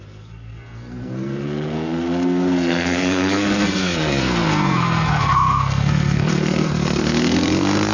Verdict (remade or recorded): remade